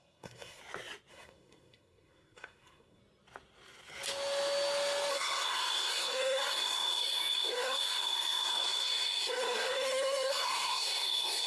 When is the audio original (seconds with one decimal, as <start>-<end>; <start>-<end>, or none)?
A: 0.6-1.1; 3.0-5.1